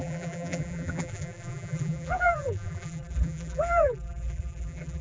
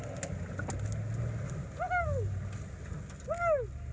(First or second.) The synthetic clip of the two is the first